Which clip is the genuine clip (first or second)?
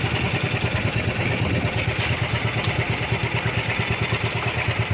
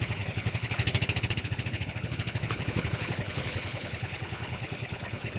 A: first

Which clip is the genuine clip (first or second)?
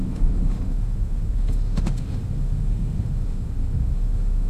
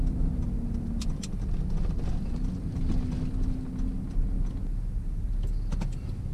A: second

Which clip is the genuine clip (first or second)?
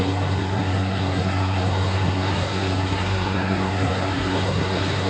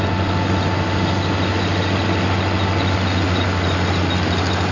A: second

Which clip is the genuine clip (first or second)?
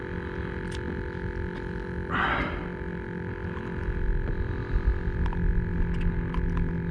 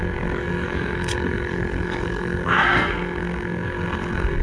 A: first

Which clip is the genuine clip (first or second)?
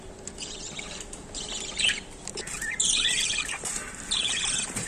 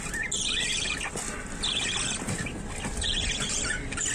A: second